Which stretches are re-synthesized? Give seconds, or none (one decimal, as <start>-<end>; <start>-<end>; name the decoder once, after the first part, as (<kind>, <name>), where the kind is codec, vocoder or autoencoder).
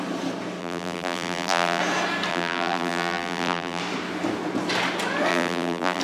0.6-1.8 (vocoder, BigVGAN v2); 2.3-3.8; 5.3-6.0